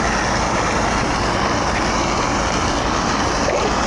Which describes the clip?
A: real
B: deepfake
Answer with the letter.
A